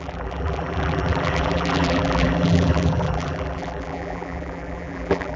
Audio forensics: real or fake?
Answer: fake